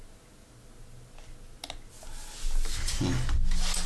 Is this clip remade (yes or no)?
no